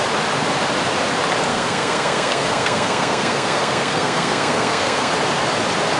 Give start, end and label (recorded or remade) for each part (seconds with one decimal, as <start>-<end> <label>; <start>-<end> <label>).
0.0-1.5 recorded; 1.5-5.1 remade; 5.1-6.0 recorded